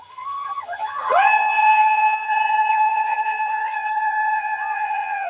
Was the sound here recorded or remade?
remade